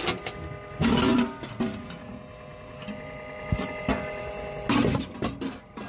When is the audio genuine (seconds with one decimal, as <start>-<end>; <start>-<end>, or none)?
0.0-5.9